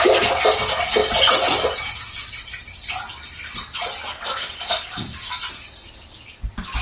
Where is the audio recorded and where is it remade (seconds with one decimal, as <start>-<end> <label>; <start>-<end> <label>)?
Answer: 0.0-6.8 recorded